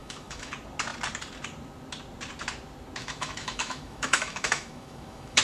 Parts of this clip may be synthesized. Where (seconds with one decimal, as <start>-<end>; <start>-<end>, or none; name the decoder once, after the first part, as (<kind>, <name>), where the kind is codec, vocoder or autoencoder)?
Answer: 0.0-0.5 (autoencoder, DAC-VAE); 3.0-5.4